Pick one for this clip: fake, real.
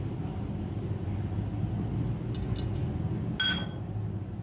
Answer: real